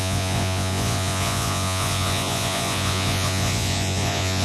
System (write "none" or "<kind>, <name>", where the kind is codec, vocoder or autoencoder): vocoder, Vocos